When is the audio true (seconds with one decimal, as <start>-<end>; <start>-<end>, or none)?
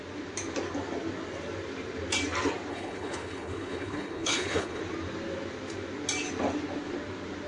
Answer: 0.0-2.7; 4.8-7.5